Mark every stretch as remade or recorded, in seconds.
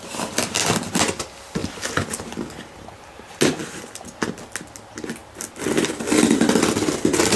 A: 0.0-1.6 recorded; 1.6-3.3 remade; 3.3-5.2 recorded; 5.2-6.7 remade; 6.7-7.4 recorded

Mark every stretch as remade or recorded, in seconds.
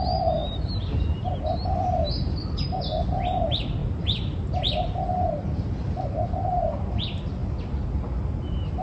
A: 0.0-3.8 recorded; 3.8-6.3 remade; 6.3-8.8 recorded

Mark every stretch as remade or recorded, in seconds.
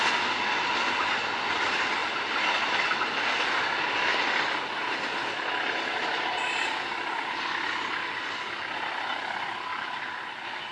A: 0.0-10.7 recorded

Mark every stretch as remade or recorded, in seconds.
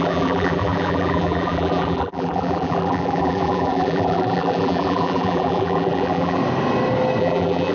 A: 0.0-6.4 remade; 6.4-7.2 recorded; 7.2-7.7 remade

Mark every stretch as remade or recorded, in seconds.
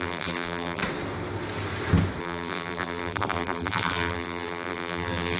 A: 0.0-0.8 remade; 0.8-2.2 recorded; 2.2-5.4 remade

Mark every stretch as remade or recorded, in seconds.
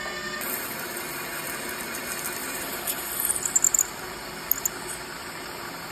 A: 0.0-2.4 recorded; 2.4-3.1 remade; 3.1-5.9 recorded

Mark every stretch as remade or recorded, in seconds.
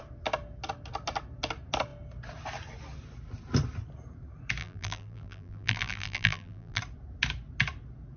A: 0.0-4.6 recorded; 4.6-6.8 remade; 6.8-8.2 recorded